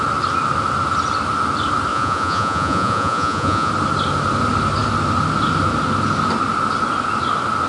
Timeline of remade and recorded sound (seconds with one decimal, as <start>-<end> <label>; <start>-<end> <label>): 0.0-1.9 recorded; 1.9-3.7 remade; 3.7-7.7 recorded